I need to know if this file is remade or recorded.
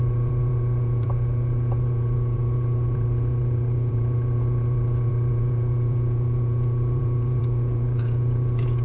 remade